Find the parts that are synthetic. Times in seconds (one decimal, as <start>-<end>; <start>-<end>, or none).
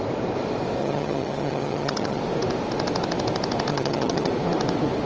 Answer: 0.8-2.2; 3.7-4.3